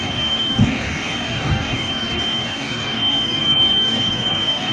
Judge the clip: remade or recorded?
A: remade